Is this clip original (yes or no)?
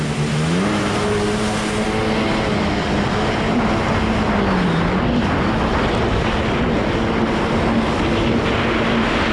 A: yes